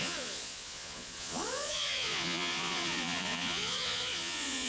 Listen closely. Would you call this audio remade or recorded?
remade